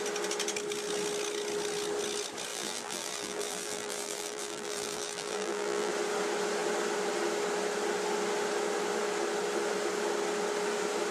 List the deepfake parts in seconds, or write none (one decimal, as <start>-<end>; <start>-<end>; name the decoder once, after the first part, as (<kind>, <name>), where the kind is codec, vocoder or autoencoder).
2.5-5.9 (vocoder, BigVGAN v2)